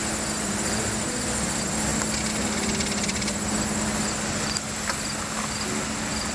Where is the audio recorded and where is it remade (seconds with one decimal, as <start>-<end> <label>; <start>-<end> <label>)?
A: 0.0-6.3 recorded